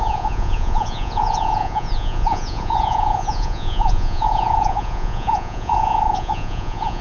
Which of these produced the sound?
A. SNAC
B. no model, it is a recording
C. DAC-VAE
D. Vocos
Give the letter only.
D